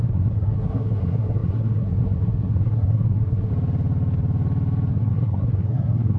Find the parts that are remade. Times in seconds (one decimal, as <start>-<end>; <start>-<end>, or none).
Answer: 0.0-3.5; 4.9-6.2

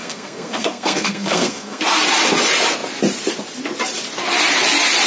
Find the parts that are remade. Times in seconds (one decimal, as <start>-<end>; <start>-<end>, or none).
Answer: 0.0-1.8

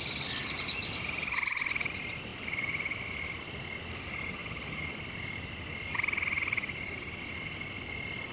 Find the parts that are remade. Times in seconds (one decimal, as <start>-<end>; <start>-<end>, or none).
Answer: none

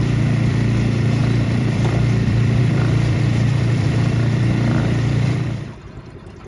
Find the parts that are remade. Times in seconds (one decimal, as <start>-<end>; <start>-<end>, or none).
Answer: 0.0-6.5

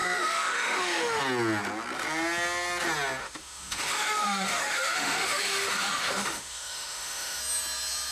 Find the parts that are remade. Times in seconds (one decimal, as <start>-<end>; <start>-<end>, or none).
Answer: 0.0-1.2; 3.2-7.4

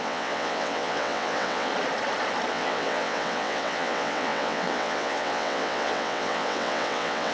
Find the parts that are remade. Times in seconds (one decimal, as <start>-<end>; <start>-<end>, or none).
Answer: 0.0-1.7; 2.5-7.3

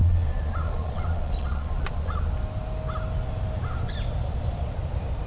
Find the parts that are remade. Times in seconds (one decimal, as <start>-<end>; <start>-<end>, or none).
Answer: 0.0-2.2

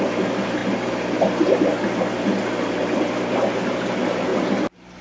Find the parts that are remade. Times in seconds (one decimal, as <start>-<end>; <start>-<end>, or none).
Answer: none